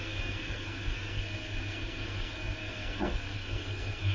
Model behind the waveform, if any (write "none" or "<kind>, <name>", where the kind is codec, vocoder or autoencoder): codec, SNAC